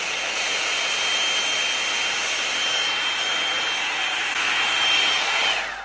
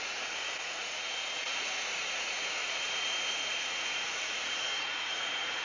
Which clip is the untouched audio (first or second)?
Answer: first